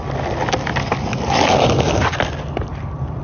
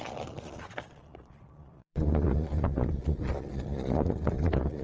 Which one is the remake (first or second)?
second